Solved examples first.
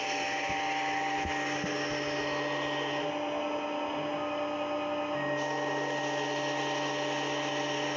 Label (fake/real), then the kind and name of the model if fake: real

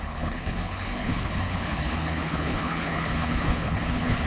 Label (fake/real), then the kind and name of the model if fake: fake, codec, HILCodec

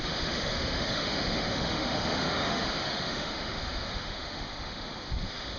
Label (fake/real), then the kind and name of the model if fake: fake, autoencoder, DAC-VAE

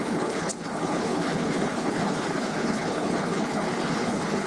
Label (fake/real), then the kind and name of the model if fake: fake, codec, HILCodec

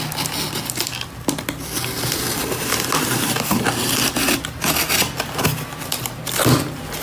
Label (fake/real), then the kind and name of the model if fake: real